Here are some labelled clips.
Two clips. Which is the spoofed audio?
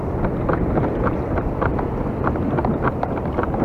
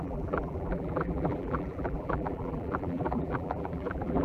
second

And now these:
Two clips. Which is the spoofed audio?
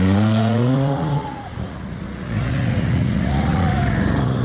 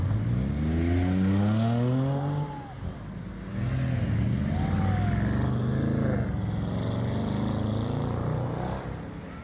first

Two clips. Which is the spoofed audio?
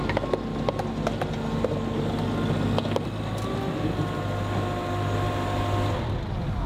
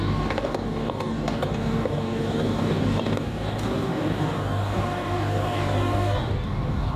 second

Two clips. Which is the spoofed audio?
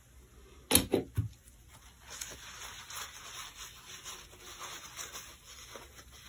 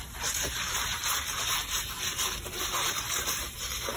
second